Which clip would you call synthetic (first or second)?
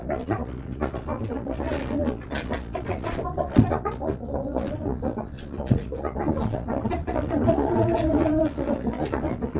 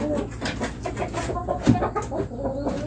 first